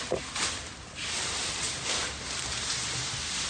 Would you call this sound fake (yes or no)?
no